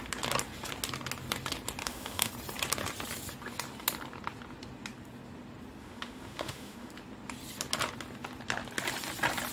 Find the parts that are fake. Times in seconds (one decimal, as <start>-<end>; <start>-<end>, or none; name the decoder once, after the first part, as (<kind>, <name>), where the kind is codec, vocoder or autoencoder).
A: 1.8-2.3 (autoencoder, DAC-VAE); 5.8-6.9